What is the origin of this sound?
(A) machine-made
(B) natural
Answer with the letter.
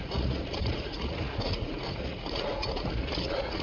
A